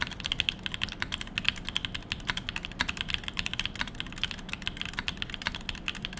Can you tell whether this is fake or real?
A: real